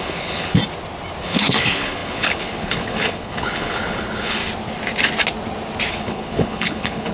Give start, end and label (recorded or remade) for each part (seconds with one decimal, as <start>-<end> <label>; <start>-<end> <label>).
0.0-0.6 remade; 0.6-1.2 recorded; 1.2-4.4 remade; 4.4-5.9 recorded; 5.9-7.1 remade